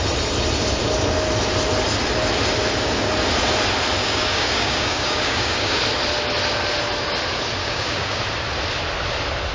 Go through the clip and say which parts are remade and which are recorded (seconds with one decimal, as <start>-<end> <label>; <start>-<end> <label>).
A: 0.0-4.0 recorded; 4.0-5.8 remade; 5.8-7.6 recorded; 7.6-8.2 remade; 8.2-9.5 recorded